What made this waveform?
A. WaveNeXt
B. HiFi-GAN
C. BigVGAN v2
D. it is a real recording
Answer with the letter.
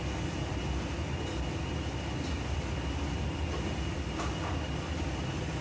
D